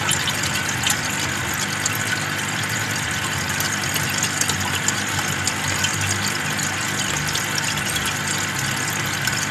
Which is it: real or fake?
real